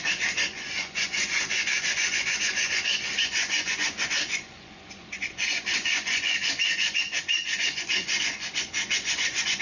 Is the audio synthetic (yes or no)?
yes